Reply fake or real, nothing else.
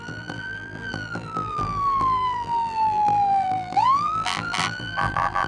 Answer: fake